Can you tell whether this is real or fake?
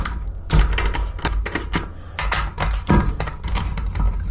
real